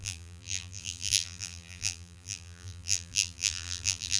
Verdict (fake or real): fake